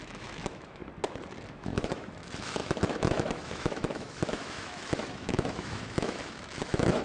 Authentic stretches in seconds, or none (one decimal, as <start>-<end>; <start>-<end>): 0.8-1.5